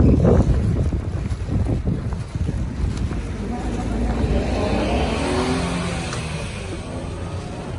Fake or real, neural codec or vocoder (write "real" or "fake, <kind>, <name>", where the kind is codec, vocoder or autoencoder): real